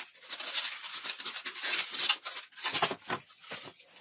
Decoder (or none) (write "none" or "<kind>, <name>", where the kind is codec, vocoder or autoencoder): none